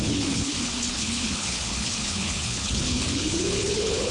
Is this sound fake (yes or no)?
yes